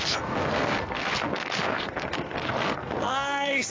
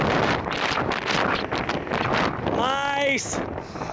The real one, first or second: second